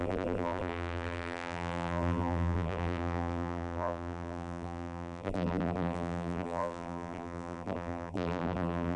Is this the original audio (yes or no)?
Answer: no